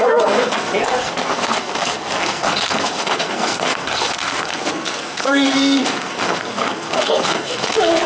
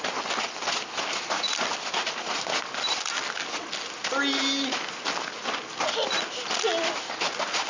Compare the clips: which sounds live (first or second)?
second